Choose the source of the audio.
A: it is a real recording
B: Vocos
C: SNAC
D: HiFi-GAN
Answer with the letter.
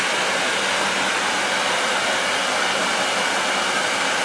A